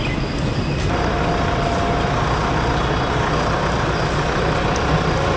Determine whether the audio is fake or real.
real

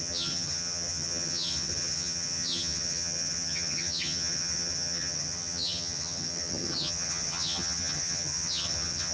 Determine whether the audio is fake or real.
fake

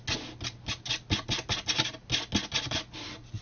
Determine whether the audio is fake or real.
real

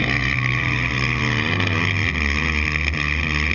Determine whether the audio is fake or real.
real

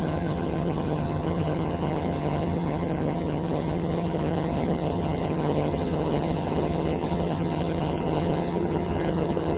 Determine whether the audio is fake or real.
fake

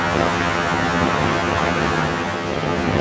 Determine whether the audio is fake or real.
fake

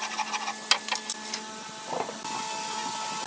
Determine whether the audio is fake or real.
real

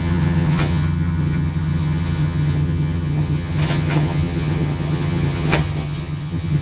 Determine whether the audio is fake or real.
fake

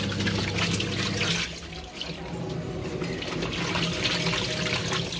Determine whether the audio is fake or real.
real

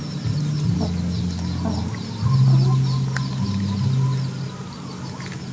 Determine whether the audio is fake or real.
real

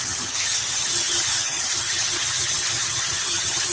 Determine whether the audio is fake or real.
fake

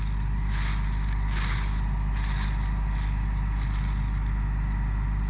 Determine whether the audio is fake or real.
real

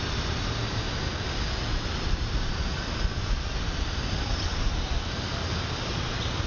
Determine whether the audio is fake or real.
real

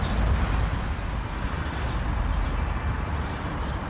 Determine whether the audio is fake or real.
real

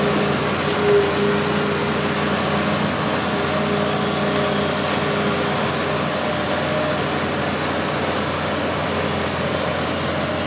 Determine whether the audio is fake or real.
real